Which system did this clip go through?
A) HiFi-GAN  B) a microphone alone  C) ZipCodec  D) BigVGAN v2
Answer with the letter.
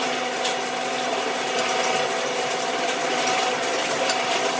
B